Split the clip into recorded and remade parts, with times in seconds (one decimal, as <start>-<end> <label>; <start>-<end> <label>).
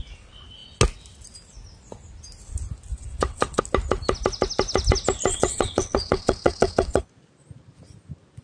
0.0-2.9 recorded; 2.9-3.6 remade; 3.6-5.3 recorded; 5.3-7.0 remade; 7.0-8.4 recorded